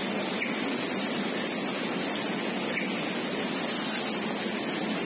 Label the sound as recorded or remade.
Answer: recorded